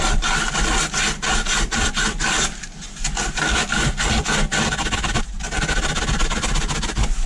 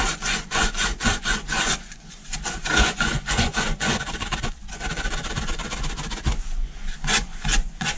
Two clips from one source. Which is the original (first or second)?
first